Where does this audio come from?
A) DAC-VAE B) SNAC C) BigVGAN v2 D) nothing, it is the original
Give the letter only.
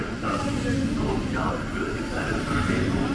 D